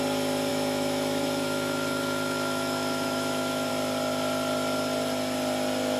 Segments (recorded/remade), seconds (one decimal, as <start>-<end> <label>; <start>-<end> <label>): 0.0-0.5 recorded; 0.5-3.7 remade; 3.7-6.0 recorded